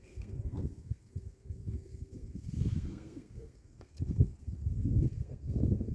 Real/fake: fake